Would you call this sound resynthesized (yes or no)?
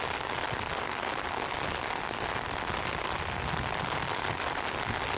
no